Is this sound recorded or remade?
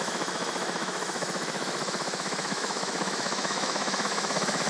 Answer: remade